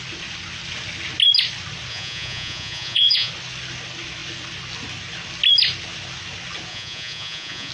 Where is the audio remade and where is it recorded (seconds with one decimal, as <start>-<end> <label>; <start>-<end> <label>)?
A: 0.0-1.9 recorded; 1.9-3.3 remade; 3.3-6.7 recorded; 6.7-7.7 remade